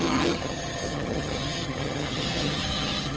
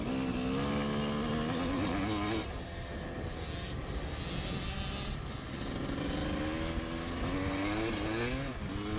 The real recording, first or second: second